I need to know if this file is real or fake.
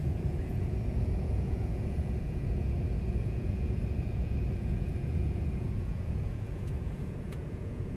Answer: fake